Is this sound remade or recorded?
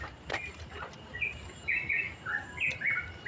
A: recorded